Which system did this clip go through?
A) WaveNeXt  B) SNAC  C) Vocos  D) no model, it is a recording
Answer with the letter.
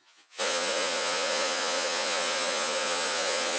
C